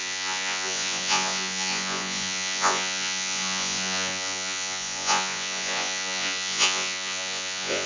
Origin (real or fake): fake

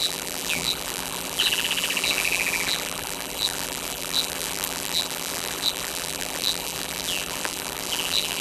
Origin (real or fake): fake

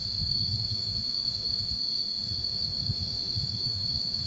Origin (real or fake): fake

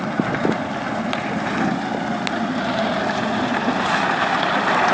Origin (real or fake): real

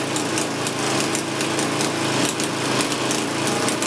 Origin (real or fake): real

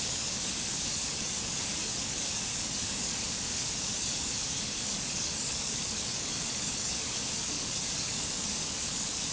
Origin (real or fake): fake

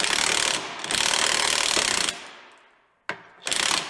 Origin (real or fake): real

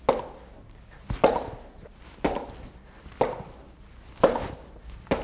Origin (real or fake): real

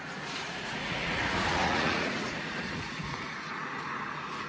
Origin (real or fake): fake